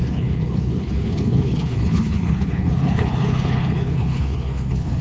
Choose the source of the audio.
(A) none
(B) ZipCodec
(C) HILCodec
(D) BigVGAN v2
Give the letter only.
C